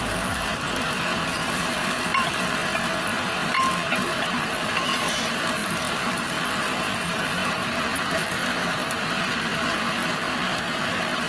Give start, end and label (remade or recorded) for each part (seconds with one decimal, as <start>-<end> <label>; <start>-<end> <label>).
0.0-0.5 remade; 0.5-1.0 recorded; 1.0-2.6 remade; 2.6-3.5 recorded; 3.5-11.3 remade